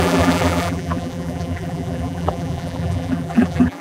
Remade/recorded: remade